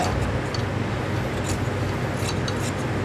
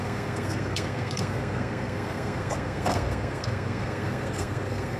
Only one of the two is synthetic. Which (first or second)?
second